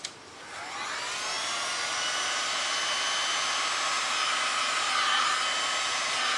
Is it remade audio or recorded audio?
recorded